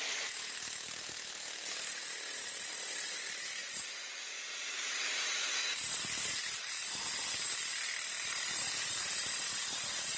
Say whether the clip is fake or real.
real